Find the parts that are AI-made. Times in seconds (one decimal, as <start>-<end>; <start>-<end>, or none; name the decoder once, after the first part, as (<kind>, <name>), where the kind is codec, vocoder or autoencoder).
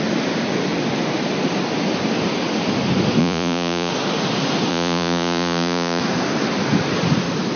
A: 3.2-3.9 (vocoder, Vocos); 4.7-6.0